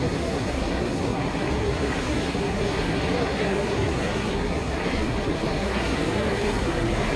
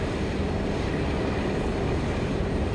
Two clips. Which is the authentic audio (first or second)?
second